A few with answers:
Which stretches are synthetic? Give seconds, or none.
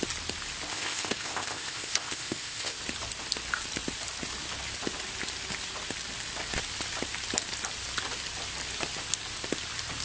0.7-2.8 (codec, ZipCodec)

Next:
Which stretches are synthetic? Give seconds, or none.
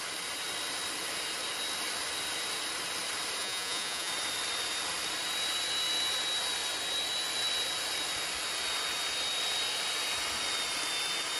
3.4-4.1 (vocoder, Vocos)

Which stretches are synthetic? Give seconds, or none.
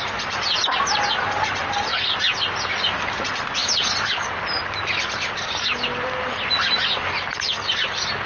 3.6-7.3 (vocoder, BigVGAN v2)